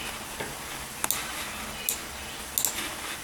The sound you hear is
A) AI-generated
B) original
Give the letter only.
B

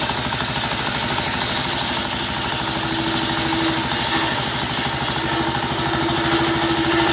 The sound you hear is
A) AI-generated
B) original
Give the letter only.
B